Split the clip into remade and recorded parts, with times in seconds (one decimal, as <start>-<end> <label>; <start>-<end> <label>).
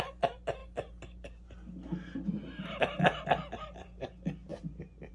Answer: 0.0-5.1 recorded